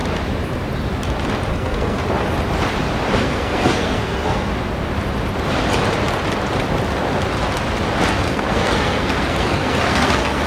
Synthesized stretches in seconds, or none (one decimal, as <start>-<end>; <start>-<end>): 1.5-2.0; 3.2-4.5; 8.1-10.5